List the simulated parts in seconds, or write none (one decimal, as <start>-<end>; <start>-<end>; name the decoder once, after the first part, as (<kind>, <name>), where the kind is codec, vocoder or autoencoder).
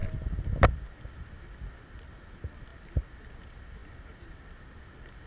none